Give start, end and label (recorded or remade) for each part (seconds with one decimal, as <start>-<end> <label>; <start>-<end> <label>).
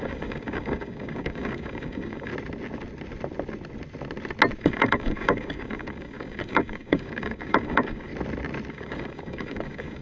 0.0-2.3 remade; 2.3-4.6 recorded; 4.6-8.1 remade; 8.1-8.7 recorded; 8.7-10.0 remade